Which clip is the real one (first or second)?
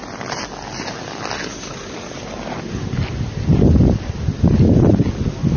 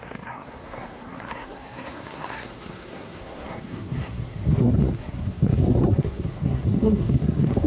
first